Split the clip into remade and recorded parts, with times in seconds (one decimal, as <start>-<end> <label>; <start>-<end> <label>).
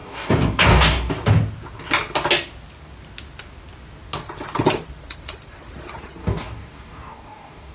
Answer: 0.0-1.1 remade; 1.1-6.2 recorded; 6.2-7.7 remade